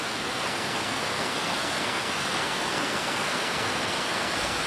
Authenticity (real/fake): fake